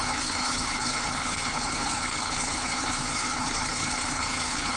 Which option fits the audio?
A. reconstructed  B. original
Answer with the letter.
A